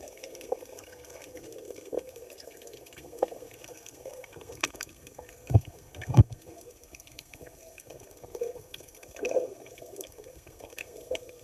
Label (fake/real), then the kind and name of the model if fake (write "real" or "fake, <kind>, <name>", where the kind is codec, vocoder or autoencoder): fake, codec, SNAC